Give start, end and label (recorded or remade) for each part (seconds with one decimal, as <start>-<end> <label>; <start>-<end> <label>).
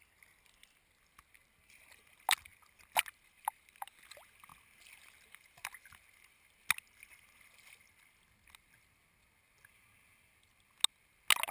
0.0-11.5 recorded